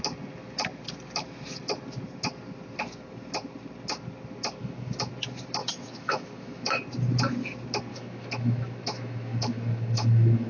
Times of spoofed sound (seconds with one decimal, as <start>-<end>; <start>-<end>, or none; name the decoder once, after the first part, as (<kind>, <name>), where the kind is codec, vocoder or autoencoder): 4.6-5.1 (autoencoder, DAC-VAE); 5.6-6.8; 7.9-10.5